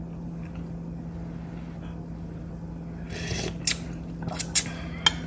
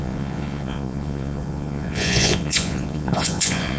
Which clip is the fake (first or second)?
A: second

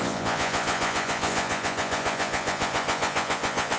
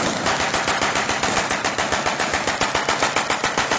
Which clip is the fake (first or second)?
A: first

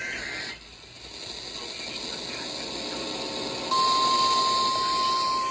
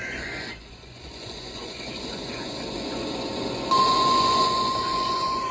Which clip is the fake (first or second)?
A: second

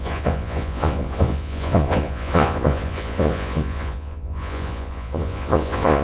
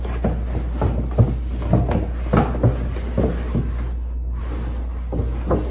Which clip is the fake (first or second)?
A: first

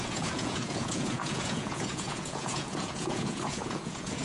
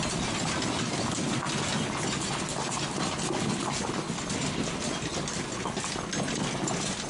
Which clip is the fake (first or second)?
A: first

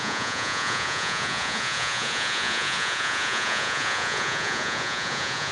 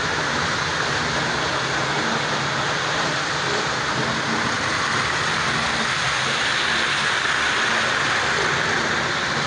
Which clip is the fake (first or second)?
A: first